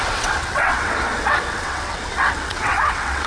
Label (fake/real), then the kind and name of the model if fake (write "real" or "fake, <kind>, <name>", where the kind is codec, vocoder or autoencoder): fake, vocoder, WaveNeXt